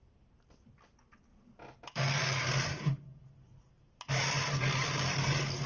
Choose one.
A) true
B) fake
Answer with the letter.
A